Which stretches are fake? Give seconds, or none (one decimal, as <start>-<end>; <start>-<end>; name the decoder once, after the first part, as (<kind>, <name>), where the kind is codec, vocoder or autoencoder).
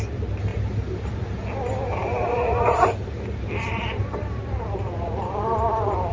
0.0-0.5 (vocoder, BigVGAN v2); 1.6-6.1